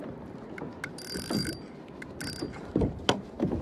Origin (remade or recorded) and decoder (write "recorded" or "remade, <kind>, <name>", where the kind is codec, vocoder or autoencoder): recorded